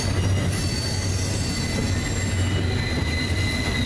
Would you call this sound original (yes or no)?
yes